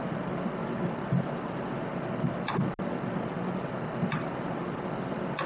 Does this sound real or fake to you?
real